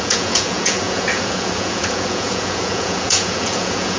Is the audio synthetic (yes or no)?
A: yes